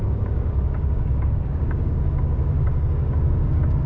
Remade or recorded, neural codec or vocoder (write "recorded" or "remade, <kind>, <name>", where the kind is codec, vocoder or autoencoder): remade, codec, DAC